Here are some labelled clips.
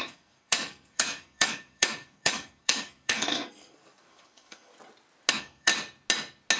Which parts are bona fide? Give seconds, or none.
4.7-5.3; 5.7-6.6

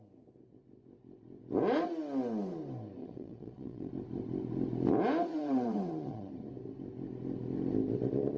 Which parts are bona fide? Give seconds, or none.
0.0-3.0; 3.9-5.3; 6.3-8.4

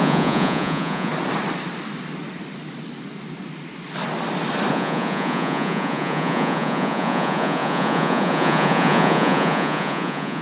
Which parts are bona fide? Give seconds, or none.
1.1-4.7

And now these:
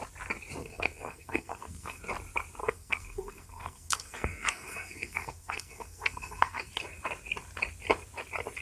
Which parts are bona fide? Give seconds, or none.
0.0-0.6; 2.0-2.6; 6.7-8.6

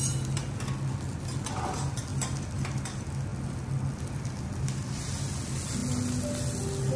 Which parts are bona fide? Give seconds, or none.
0.0-7.0

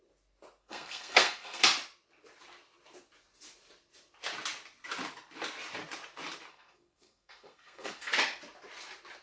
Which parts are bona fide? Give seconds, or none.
0.0-0.6; 1.6-6.5; 8.1-9.2

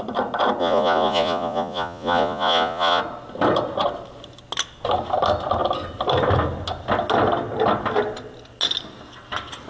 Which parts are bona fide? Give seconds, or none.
0.0-0.6; 3.0-9.7